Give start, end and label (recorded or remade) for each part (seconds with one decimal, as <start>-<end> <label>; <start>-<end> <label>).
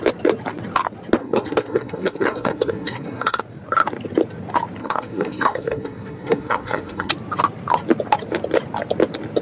0.0-1.2 recorded; 1.2-3.4 remade; 3.4-4.8 recorded; 4.8-7.1 remade; 7.1-9.4 recorded